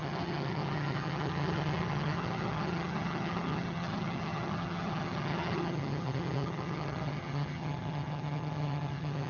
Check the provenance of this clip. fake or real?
fake